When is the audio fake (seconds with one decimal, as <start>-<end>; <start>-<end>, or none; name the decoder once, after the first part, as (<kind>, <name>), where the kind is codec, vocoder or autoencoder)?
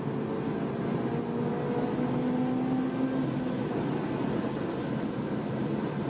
none